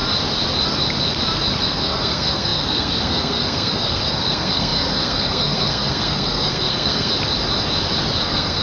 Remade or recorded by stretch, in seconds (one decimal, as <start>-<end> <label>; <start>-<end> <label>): 0.0-1.6 recorded; 1.6-7.1 remade; 7.1-8.2 recorded; 8.2-8.6 remade